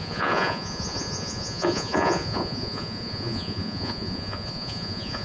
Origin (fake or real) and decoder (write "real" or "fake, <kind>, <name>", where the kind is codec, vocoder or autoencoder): fake, vocoder, Vocos